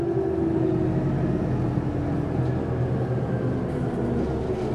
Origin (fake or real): real